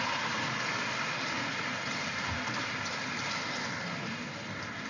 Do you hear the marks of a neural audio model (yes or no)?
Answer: no